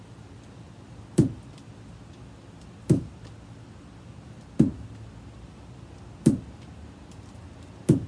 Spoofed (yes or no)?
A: no